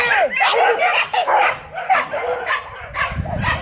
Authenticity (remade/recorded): recorded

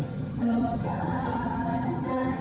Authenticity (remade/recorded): remade